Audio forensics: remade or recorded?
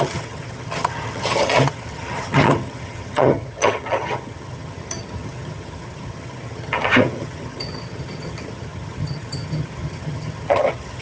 remade